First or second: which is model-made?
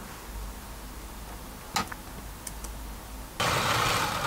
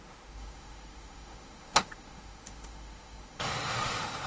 second